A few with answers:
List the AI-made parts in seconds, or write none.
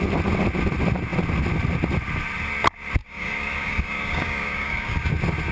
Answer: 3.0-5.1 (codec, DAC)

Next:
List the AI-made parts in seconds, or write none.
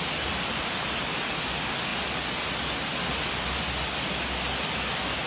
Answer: none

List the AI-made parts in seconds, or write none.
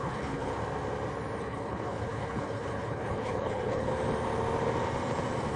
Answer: 0.0-0.5 (codec, HILCodec); 1.4-3.9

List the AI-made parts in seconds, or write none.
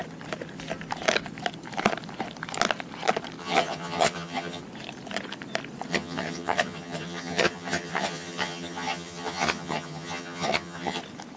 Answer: 3.4-4.6 (vocoder, HiFi-GAN); 5.9-11.0